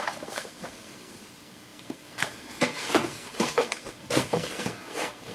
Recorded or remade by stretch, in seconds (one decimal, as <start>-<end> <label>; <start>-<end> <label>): 0.0-5.3 remade